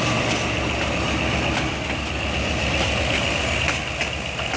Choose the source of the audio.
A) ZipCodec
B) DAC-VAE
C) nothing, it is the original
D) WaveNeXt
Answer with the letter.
C